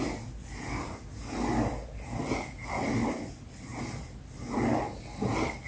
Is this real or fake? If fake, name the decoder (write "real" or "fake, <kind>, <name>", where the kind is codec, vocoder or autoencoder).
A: real